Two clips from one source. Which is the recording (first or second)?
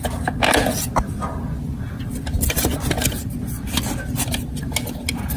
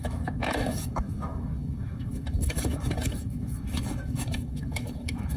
first